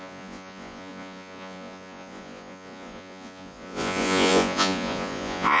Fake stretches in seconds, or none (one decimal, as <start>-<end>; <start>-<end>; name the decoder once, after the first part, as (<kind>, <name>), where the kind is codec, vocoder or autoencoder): 0.0-5.6 (vocoder, Vocos)